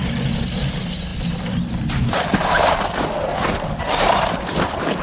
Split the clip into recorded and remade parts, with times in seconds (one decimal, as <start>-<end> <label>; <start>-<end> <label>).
0.0-5.0 recorded